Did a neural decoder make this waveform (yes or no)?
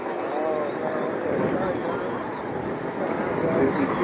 no